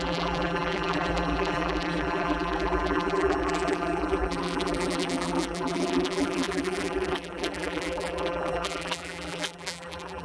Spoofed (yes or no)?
yes